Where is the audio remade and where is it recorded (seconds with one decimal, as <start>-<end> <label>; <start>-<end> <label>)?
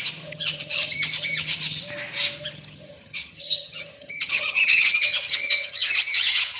0.0-1.8 remade; 1.8-2.5 recorded; 2.5-6.6 remade